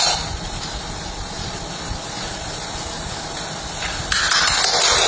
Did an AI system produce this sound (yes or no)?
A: no